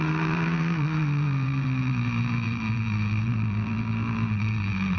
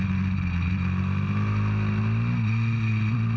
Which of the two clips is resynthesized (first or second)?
first